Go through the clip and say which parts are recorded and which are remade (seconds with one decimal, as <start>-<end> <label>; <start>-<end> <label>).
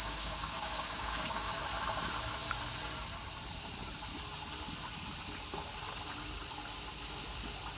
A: 0.0-1.6 remade; 1.6-7.8 recorded